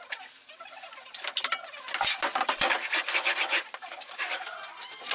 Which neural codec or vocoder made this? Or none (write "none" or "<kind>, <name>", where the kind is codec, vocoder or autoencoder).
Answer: none